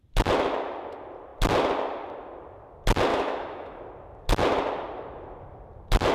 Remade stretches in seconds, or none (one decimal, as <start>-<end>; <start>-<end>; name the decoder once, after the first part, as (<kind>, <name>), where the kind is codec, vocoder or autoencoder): 3.1-3.8 (autoencoder, DAC-VAE)